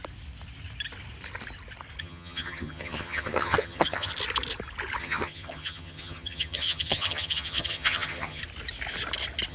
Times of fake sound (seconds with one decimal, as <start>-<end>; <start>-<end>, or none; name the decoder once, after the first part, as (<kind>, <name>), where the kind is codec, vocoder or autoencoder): 2.0-4.1 (vocoder, HiFi-GAN); 5.0-8.4